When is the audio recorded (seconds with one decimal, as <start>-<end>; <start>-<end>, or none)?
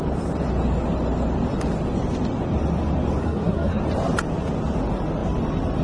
0.0-3.2; 3.8-5.8